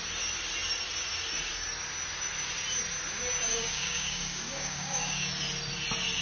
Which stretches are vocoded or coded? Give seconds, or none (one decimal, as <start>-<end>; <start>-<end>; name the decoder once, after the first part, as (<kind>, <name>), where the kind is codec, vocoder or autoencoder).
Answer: 3.5-5.3 (codec, DAC)